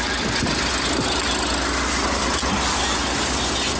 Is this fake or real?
real